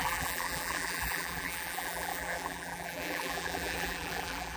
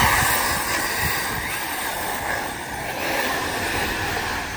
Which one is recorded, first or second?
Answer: second